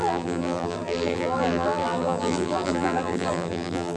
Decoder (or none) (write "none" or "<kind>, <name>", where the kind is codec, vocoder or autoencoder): vocoder, BigVGAN v2